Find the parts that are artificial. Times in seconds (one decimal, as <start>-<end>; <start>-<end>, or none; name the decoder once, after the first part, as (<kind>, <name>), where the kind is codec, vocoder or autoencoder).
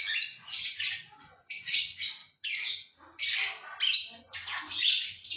0.0-2.2 (vocoder, Vocos); 4.2-5.4